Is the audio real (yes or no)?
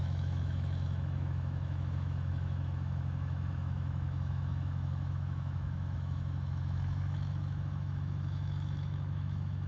no